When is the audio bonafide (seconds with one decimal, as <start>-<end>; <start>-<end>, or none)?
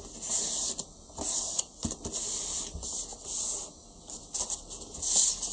0.0-5.5